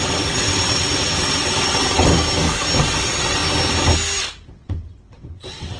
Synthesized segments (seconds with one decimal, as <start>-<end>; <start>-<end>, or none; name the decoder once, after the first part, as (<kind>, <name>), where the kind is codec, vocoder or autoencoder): 0.0-2.1 (vocoder, WaveNeXt); 2.8-3.4; 4.5-5.8